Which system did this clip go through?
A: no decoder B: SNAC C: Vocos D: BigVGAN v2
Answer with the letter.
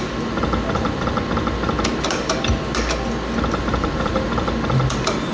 A